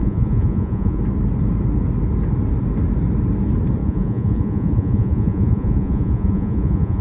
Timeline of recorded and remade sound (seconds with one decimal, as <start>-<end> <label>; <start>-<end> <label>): 0.0-1.0 remade; 1.0-3.8 recorded; 3.8-7.0 remade